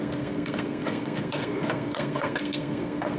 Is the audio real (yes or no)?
no